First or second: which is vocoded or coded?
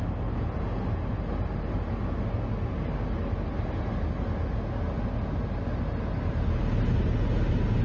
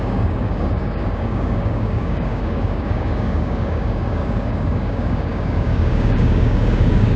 second